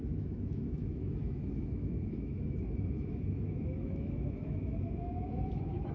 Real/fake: fake